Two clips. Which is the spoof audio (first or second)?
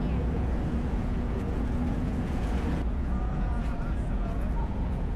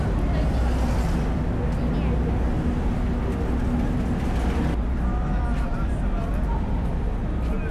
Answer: first